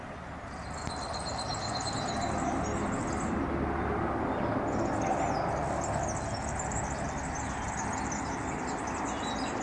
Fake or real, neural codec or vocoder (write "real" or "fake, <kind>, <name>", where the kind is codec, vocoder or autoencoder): real